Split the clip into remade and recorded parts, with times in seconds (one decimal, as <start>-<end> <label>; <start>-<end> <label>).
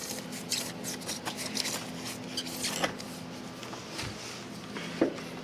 0.0-5.4 recorded